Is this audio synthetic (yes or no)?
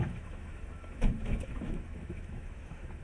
yes